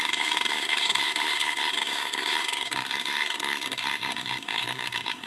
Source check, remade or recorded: remade